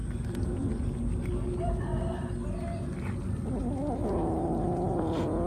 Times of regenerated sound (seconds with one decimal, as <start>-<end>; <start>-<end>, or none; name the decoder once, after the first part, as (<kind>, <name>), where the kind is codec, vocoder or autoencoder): none